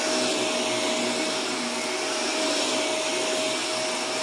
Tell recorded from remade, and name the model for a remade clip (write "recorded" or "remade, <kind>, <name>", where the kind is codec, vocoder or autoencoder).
recorded